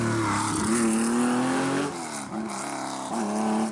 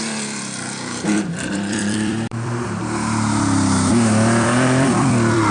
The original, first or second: first